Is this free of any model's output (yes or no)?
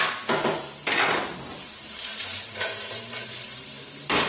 no